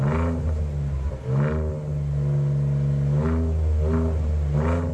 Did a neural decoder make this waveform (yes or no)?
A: no